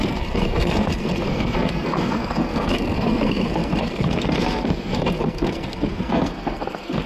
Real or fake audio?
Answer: fake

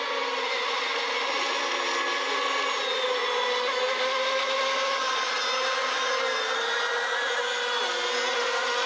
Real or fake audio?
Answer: real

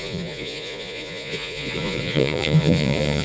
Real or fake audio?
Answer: fake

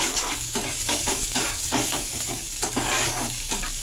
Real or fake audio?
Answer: fake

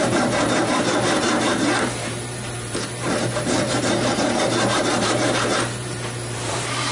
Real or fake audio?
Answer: fake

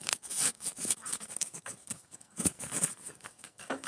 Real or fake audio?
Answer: fake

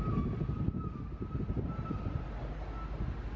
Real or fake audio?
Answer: real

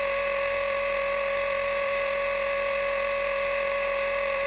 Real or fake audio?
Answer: fake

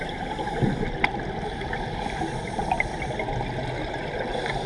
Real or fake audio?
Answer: real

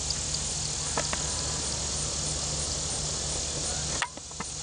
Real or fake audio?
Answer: real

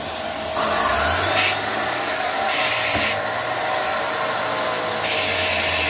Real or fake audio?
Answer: real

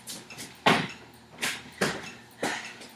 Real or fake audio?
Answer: real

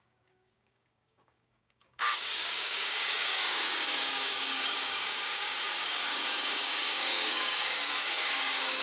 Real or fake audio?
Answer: fake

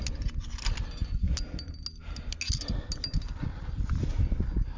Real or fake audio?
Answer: real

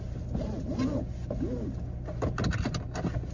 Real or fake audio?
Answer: real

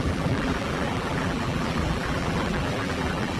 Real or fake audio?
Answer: fake